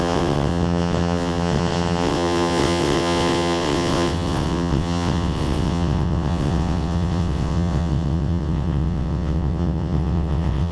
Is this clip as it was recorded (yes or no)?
no